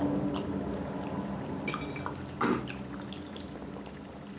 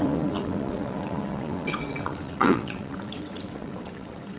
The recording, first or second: first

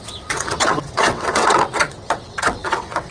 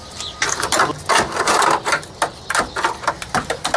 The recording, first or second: second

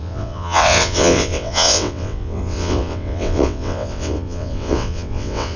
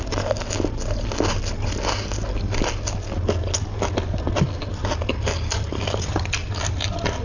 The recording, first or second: second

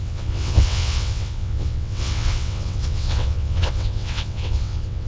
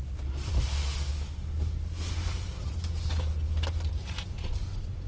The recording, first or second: second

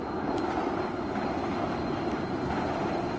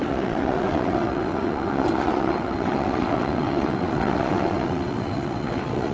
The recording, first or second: first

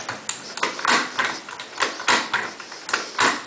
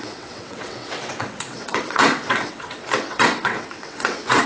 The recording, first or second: first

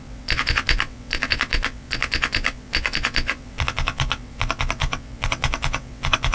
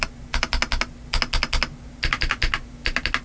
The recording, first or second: second